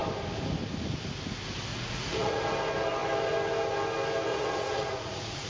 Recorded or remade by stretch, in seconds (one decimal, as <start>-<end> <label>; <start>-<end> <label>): 0.0-1.7 recorded; 1.7-2.4 remade; 2.4-4.3 recorded; 4.3-5.5 remade